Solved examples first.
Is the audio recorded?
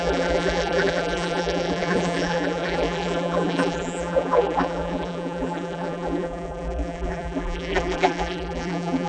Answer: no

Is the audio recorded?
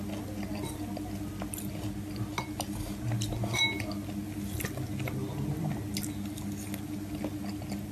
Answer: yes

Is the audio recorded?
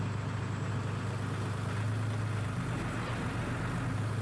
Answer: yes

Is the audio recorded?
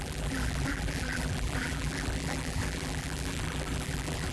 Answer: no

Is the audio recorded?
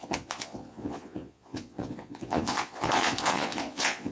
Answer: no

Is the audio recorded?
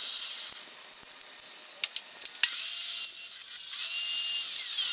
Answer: yes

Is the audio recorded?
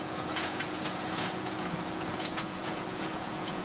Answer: no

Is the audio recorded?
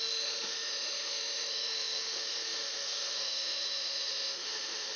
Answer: no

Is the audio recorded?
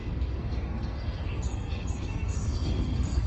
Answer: no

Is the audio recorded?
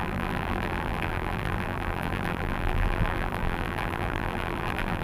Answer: no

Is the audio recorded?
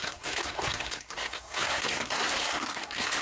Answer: no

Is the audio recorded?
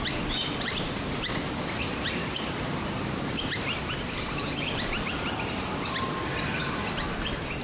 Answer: yes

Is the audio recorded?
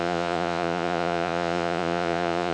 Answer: no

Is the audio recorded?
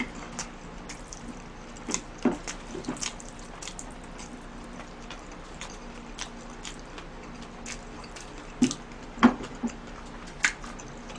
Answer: yes